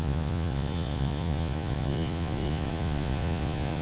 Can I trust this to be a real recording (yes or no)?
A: no